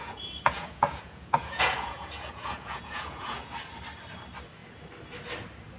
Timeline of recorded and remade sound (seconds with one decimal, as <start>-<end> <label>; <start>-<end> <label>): 0.0-3.5 remade; 3.5-5.8 recorded